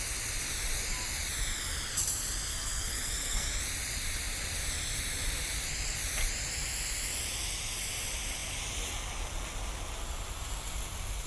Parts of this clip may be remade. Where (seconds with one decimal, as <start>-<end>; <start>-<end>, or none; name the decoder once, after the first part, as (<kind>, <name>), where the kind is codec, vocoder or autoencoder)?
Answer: 2.5-3.5 (codec, SNAC)